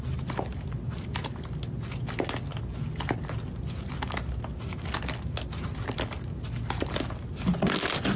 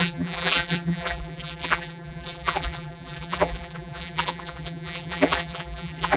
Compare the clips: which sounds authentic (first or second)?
first